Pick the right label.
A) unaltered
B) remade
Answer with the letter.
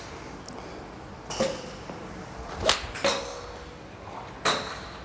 A